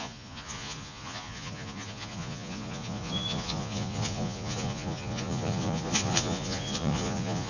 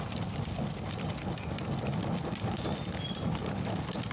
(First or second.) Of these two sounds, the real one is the second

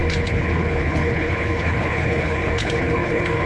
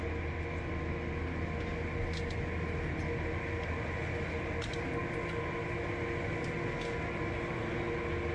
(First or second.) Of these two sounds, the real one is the second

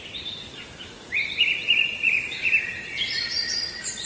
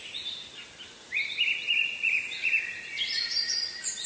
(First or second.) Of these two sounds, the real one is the second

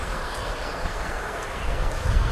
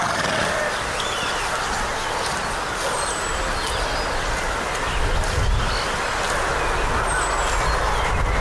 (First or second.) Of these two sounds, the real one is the second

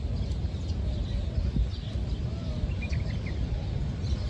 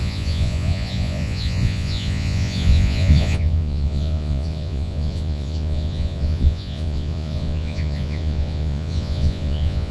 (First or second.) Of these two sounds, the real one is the first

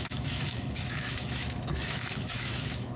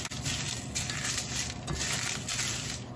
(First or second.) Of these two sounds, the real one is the second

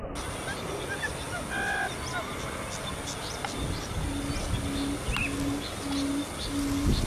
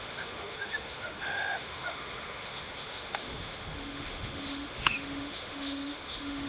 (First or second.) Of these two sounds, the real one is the first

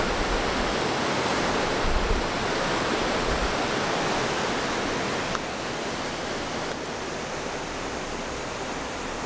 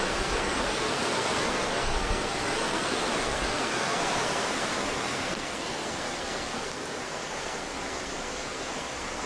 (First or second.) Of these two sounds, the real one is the first